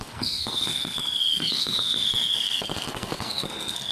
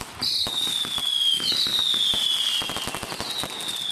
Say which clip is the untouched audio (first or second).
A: second